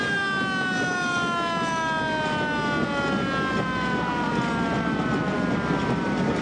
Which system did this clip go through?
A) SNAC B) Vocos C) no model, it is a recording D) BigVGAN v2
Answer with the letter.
C